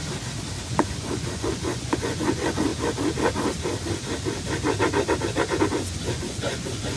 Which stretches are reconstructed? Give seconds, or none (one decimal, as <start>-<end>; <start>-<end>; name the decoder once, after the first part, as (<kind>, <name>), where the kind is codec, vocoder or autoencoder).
0.6-2.7 (vocoder, Vocos); 5.6-7.0